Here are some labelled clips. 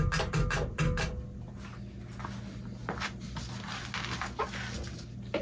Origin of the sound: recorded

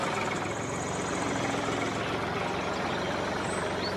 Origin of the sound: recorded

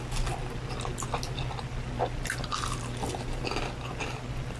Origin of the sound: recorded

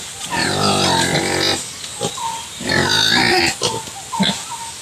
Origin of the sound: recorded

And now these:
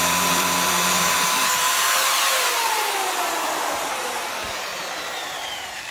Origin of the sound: remade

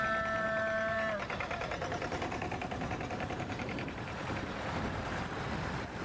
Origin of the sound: remade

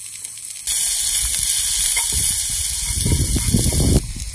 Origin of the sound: recorded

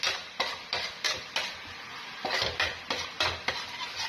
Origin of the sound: recorded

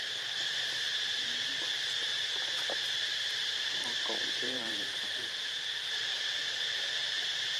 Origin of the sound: remade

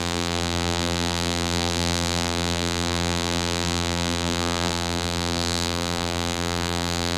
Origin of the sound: remade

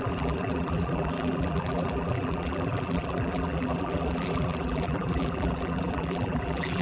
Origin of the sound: remade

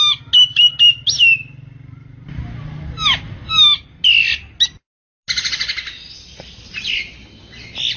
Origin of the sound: recorded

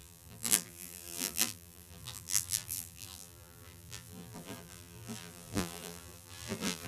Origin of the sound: remade